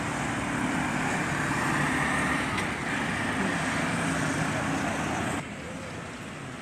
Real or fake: real